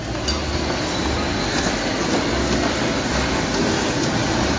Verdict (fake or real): real